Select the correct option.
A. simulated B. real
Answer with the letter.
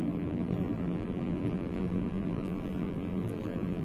A